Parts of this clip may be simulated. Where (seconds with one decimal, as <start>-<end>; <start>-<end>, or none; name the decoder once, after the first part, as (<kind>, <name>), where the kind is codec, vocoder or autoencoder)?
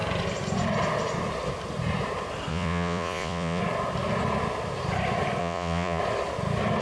2.5-3.6 (vocoder, Vocos); 5.4-6.0